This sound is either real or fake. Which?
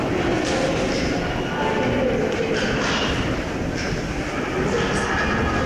real